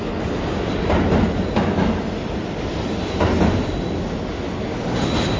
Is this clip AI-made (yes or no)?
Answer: no